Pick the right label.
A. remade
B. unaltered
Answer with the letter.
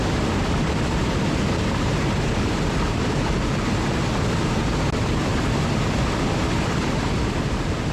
B